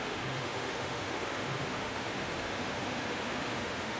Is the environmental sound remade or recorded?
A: remade